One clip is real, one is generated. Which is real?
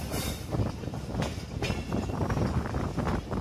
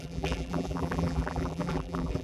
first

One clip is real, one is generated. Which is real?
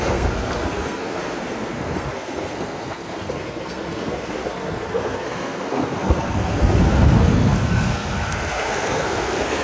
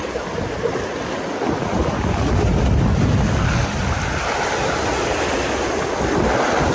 second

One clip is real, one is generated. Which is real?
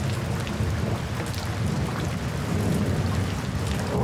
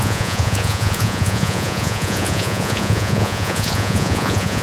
first